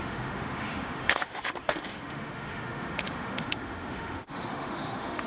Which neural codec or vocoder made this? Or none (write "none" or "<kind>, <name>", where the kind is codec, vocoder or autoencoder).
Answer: autoencoder, DAC-VAE